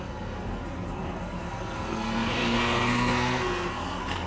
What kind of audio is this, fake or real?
fake